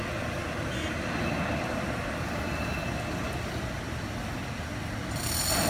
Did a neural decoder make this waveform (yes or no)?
no